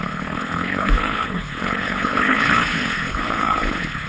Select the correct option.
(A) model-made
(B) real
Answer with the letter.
A